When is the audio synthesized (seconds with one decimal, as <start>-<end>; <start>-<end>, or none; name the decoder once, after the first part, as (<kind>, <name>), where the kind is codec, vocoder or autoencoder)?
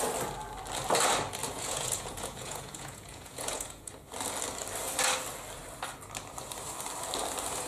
1.4-3.9 (vocoder, Vocos)